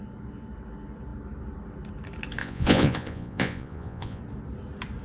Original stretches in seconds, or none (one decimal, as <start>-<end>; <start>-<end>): 0.0-2.4; 4.2-5.0